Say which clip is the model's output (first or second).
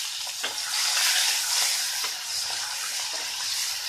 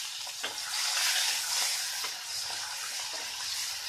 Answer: first